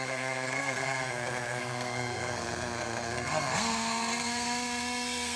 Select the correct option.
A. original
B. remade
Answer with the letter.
B